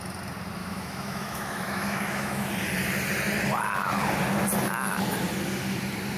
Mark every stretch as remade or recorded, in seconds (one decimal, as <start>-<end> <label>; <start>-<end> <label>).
0.0-0.6 recorded; 0.6-2.5 remade; 2.5-6.2 recorded